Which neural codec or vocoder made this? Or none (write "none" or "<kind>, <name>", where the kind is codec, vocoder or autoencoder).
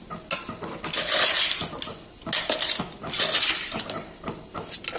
none